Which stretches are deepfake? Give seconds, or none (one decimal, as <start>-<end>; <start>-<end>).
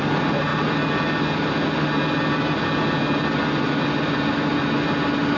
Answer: none